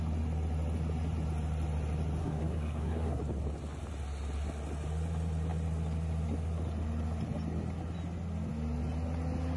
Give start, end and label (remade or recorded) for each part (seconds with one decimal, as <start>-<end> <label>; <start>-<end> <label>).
0.0-2.2 recorded; 2.2-3.2 remade; 3.2-9.6 recorded